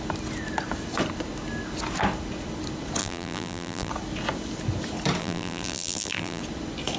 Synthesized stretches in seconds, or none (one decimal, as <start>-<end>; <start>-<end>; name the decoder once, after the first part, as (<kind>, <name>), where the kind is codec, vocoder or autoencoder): 3.0-3.9 (vocoder, BigVGAN v2); 5.2-6.4